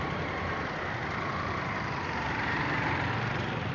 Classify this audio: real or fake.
fake